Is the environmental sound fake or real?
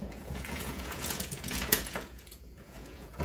fake